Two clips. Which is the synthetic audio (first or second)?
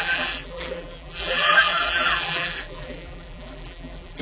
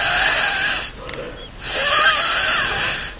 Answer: first